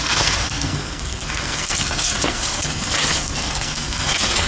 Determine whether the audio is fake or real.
fake